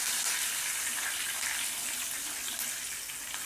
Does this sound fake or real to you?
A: real